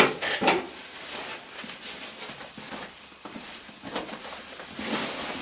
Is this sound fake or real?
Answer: real